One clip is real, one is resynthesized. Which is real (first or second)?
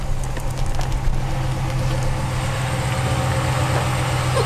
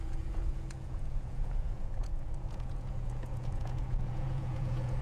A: first